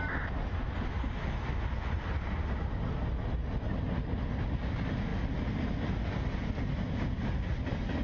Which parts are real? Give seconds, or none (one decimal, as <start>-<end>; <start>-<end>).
0.0-8.0